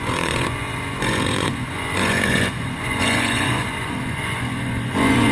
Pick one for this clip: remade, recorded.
remade